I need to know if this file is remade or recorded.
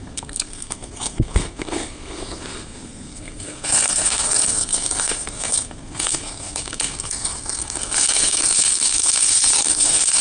remade